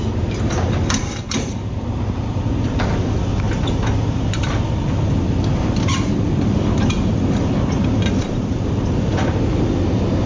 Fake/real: real